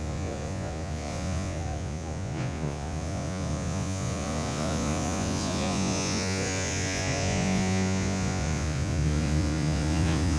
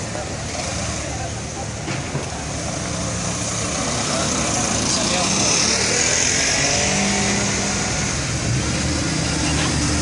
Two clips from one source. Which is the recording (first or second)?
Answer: second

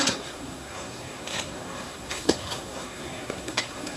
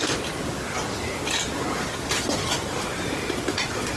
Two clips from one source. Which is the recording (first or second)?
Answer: second